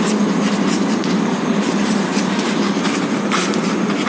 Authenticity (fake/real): real